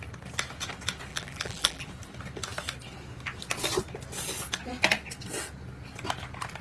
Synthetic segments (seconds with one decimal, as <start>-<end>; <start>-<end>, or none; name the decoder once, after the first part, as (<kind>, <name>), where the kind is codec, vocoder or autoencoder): 1.1-1.9 (vocoder, BigVGAN v2)